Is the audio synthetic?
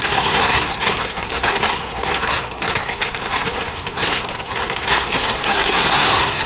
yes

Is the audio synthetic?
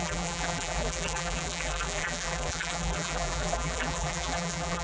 yes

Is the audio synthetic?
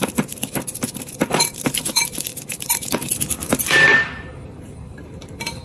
yes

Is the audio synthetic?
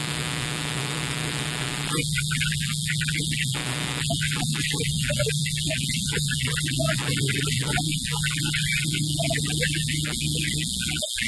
no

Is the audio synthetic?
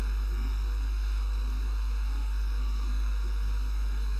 yes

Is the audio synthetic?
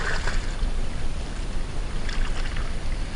no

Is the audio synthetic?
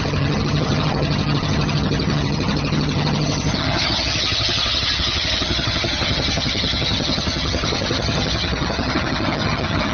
yes